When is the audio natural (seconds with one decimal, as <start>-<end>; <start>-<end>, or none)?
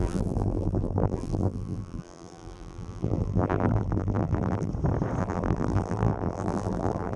4.7-5.2